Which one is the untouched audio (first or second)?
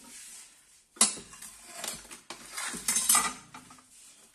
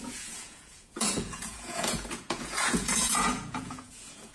first